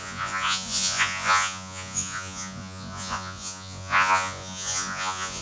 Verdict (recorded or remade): remade